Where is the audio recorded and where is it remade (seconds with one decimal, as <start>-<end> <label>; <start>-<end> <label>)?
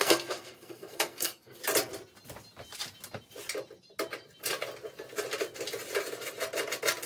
0.0-1.6 remade; 1.6-7.1 recorded